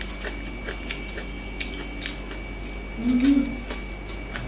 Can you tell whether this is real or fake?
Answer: real